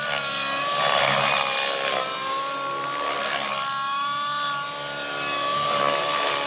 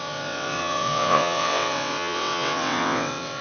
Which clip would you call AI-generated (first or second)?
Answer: second